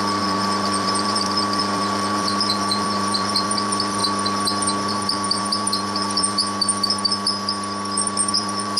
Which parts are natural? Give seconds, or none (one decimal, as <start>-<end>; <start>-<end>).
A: 4.0-4.9; 6.4-8.3